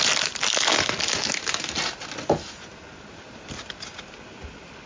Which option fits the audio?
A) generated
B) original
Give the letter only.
B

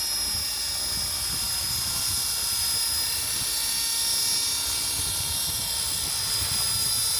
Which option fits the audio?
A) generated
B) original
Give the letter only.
B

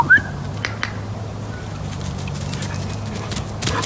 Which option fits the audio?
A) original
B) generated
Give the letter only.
A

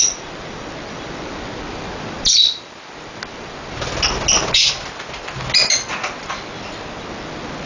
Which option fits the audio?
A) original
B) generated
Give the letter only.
A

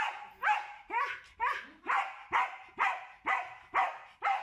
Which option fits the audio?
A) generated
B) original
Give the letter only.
B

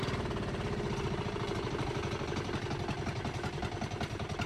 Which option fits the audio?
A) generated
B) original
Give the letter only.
B